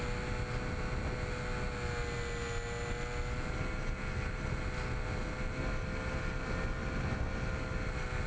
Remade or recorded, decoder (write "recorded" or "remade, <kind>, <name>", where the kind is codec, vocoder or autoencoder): recorded